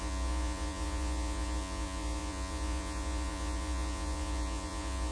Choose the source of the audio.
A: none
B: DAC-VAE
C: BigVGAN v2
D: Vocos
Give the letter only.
D